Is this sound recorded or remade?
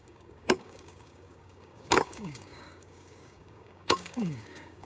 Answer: remade